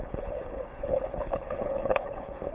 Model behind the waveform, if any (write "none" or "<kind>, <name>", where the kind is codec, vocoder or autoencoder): codec, HILCodec